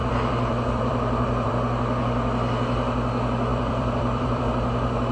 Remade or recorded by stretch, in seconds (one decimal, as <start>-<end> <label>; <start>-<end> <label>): 0.0-1.5 remade; 1.5-3.5 recorded; 3.5-4.4 remade; 4.4-5.1 recorded